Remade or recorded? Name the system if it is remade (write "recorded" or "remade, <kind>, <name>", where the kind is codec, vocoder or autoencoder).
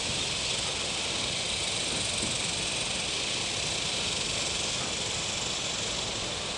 remade, vocoder, BigVGAN v2